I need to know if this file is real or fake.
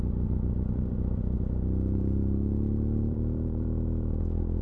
fake